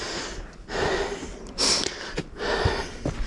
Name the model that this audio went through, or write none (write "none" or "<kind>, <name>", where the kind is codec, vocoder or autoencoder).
none